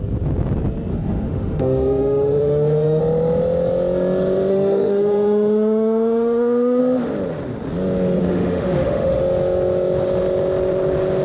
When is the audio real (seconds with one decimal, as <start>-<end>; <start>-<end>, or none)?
0.0-0.9; 3.0-4.5; 6.8-8.2; 9.2-11.2